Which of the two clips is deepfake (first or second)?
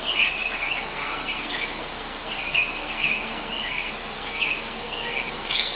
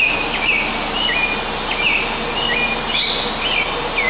first